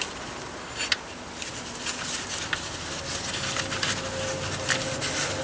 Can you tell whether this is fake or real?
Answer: real